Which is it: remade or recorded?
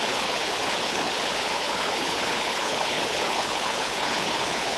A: remade